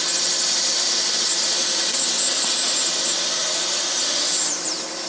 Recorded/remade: recorded